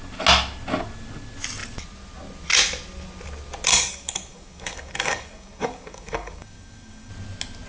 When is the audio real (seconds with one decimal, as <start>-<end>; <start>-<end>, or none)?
0.0-3.7; 7.1-7.7